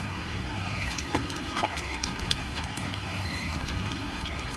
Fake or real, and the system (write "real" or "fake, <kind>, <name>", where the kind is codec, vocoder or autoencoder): fake, codec, SNAC